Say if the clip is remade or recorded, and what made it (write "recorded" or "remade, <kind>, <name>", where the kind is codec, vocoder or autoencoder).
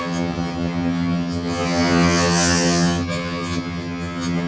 remade, vocoder, HiFi-GAN